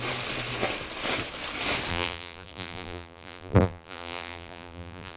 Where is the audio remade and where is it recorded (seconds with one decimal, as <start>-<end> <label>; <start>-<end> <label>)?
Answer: 0.0-1.9 recorded; 1.9-5.2 remade